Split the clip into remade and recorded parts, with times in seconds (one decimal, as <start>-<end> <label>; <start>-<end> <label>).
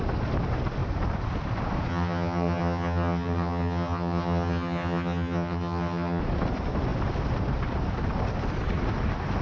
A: 0.0-1.9 recorded; 1.9-6.2 remade; 6.2-9.4 recorded